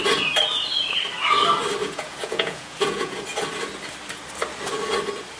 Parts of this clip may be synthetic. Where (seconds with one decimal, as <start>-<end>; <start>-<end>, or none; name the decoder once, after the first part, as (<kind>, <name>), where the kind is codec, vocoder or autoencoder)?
1.8-3.2 (vocoder, Vocos)